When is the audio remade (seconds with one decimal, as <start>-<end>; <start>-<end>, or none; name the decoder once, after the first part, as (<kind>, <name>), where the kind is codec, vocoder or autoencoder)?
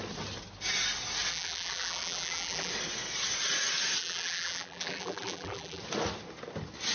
1.3-2.7 (vocoder, BigVGAN v2); 4.0-5.8